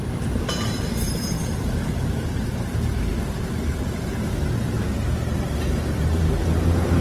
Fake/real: fake